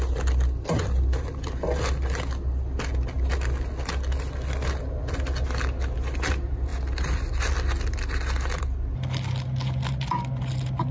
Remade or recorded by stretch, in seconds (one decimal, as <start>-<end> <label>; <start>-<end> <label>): 0.0-10.9 recorded